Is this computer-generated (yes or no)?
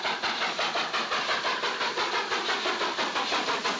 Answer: no